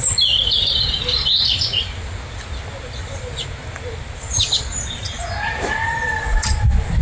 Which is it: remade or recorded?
recorded